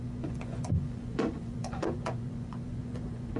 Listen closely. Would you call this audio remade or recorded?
remade